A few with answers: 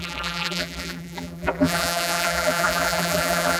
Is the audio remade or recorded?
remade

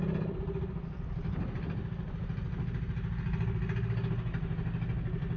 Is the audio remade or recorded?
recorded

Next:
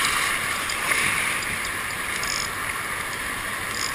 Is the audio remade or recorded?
recorded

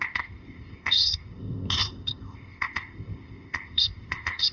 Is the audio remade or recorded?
remade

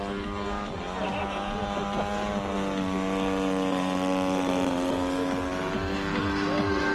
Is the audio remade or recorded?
recorded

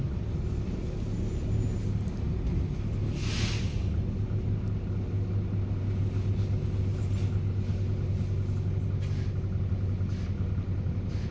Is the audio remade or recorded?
recorded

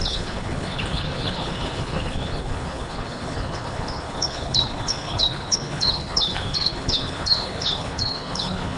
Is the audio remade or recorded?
remade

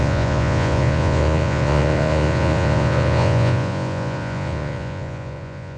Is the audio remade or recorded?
remade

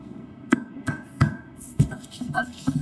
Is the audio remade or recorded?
remade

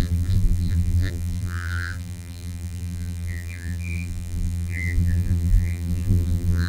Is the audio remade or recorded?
remade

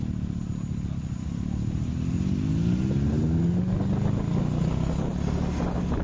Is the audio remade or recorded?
recorded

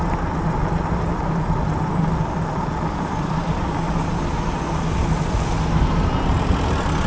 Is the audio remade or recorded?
recorded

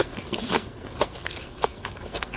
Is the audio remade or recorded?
remade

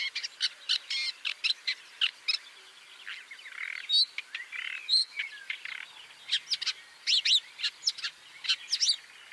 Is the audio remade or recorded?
recorded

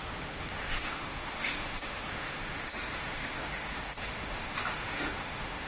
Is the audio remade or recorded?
remade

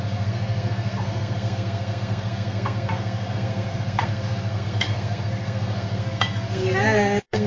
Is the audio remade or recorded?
remade